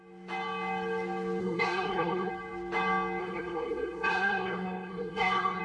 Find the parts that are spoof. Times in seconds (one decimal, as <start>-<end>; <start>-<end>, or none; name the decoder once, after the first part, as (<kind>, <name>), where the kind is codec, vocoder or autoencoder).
1.4-2.3 (codec, SNAC); 3.2-5.6